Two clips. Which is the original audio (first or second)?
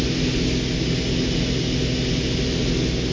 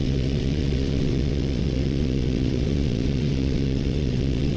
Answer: first